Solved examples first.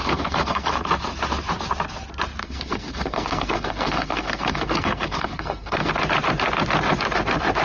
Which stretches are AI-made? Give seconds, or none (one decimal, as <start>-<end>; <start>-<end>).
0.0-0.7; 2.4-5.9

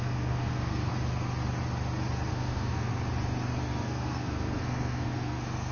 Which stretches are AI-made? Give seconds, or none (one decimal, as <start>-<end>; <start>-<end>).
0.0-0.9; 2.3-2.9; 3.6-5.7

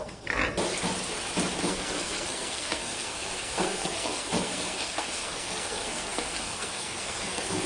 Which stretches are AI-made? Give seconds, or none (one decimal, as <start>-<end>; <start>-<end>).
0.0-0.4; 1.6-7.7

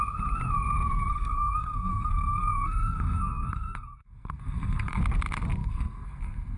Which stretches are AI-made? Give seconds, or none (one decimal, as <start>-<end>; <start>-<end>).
1.0-5.0; 5.6-6.6

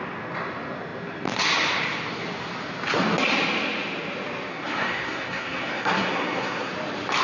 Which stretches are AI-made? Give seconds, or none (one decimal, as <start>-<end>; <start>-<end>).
4.5-6.7